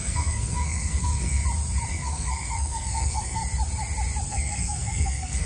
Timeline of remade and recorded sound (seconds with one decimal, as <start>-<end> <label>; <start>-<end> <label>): 0.0-1.4 remade; 1.4-1.9 recorded; 1.9-3.4 remade; 3.4-4.3 recorded; 4.3-5.5 remade